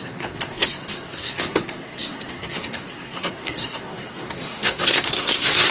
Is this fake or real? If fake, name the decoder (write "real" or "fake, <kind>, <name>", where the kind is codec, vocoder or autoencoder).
fake, codec, SNAC